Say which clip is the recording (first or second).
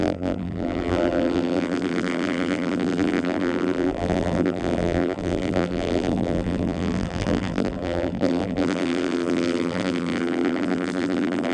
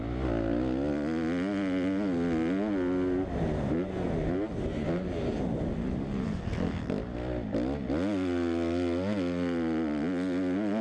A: second